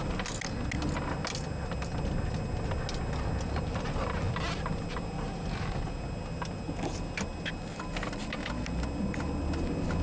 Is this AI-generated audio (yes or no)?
no